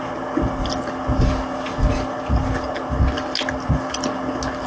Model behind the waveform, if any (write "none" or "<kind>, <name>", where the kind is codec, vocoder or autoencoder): none